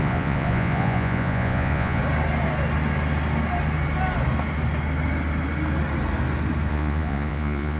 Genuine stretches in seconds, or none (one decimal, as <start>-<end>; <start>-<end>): 2.0-6.7